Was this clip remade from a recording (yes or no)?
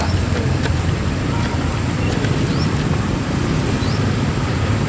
yes